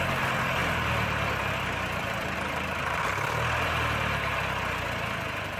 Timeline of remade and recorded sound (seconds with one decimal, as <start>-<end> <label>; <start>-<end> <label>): 0.0-0.6 recorded; 0.6-3.0 remade; 3.0-5.6 recorded